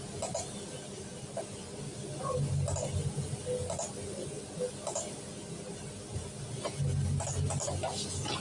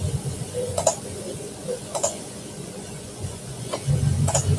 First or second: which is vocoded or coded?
second